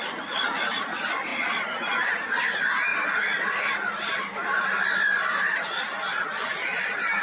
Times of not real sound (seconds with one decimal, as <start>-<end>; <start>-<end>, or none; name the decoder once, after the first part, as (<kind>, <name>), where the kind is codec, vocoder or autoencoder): 2.9-3.6 (vocoder, BigVGAN v2)